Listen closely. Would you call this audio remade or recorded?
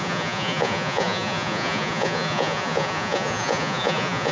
remade